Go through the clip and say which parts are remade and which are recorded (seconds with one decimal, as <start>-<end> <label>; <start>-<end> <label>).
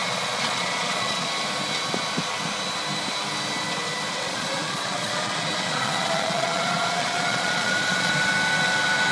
0.0-1.3 remade; 1.3-4.1 recorded; 4.1-8.1 remade; 8.1-9.1 recorded